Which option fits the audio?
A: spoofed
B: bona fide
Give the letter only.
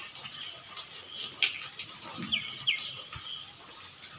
B